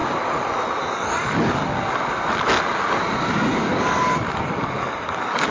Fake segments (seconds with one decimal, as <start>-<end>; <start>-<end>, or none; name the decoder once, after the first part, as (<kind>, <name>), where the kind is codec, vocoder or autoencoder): 0.8-1.6 (codec, DAC); 3.7-5.5